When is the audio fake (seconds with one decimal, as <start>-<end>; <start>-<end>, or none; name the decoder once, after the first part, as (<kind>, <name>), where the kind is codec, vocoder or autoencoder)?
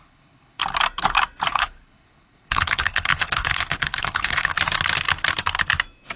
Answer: 0.0-0.6 (codec, HILCodec); 1.5-4.5